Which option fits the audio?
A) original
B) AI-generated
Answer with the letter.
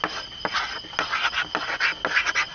A